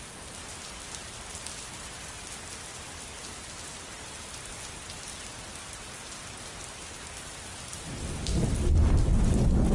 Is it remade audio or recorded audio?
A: recorded